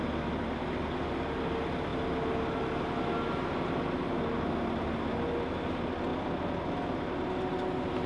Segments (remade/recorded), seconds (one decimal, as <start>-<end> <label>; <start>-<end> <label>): 0.0-8.1 recorded